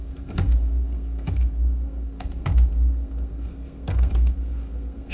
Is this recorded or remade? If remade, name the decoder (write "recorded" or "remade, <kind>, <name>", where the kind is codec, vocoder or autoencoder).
remade, codec, SNAC